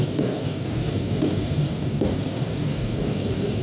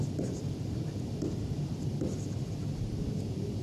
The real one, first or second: second